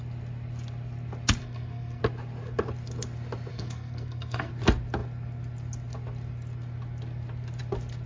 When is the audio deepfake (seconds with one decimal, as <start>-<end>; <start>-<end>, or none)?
1.4-2.0; 3.5-4.5